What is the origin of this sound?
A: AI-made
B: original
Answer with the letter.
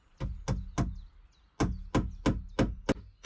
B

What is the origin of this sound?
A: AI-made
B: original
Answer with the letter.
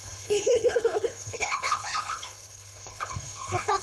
A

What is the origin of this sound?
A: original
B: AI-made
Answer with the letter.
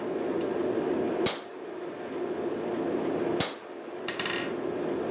A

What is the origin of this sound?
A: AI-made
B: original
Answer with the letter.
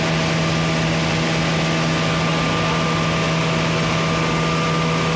B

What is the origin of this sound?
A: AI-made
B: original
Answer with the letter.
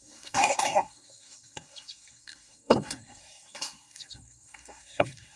A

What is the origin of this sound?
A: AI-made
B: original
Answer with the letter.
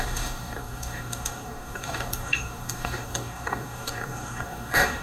A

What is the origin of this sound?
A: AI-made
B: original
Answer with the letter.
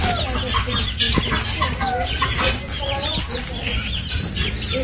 B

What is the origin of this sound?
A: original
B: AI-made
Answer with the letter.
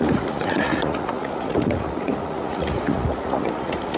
B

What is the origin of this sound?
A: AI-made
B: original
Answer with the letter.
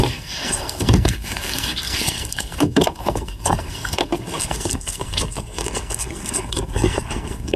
A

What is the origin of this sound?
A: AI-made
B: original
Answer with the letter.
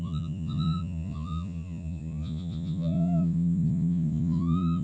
A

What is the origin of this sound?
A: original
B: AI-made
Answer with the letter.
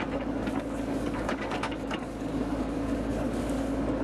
B